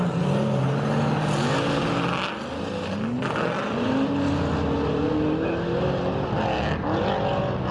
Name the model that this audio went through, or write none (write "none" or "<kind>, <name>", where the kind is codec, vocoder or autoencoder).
none